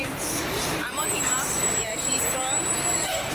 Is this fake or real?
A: fake